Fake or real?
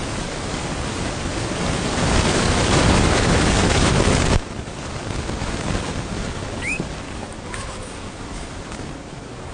fake